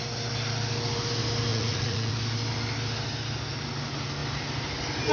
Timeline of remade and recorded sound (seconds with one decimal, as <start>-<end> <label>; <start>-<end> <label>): 0.0-1.5 recorded; 1.5-2.1 remade; 2.1-5.1 recorded